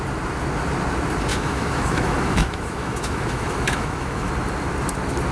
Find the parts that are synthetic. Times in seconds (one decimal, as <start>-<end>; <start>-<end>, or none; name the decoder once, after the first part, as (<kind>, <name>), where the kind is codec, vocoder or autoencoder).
1.3-4.3 (autoencoder, DAC-VAE)